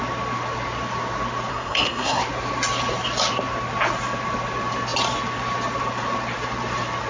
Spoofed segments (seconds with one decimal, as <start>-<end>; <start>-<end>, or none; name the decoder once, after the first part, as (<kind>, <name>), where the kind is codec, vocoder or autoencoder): 1.5-2.2 (codec, SNAC)